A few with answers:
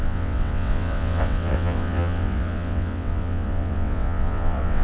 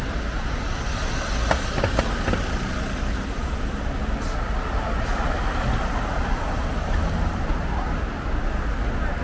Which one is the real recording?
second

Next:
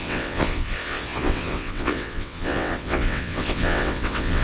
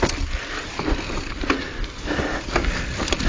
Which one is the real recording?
second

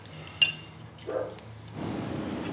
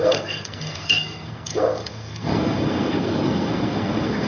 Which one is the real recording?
first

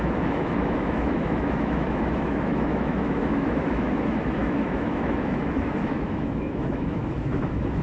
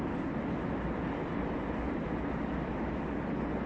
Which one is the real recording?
second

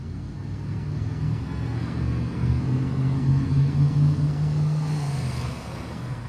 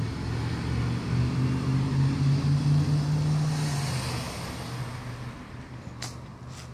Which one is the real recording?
second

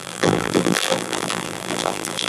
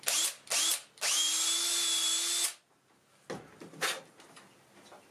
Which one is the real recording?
second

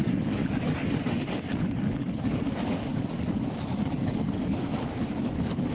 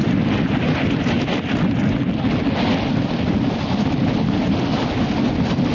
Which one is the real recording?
second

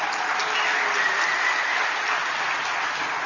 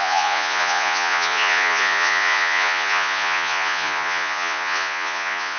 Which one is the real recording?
first